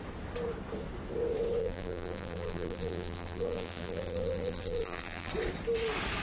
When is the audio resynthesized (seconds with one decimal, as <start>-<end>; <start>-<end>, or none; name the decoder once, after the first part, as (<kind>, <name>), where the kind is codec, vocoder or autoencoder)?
1.6-5.3 (vocoder, BigVGAN v2)